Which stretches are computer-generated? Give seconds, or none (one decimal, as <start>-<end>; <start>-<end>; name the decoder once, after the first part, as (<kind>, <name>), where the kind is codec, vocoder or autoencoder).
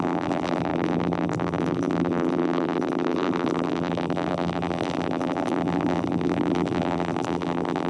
0.0-7.9 (vocoder, BigVGAN v2)